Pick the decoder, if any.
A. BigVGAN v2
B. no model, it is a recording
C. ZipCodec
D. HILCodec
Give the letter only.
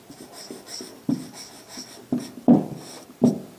A